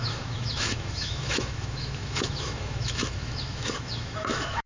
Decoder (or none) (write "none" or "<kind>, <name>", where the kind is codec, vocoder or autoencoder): autoencoder, DAC-VAE